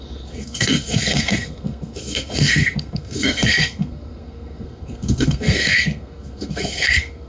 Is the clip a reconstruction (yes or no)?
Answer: yes